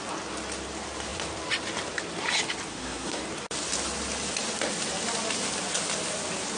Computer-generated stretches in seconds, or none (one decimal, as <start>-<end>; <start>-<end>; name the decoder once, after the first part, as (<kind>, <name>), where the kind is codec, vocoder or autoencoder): 2.7-3.2 (codec, SNAC)